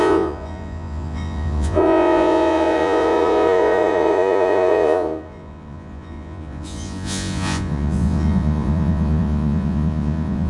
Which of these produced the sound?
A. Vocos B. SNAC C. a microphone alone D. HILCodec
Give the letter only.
A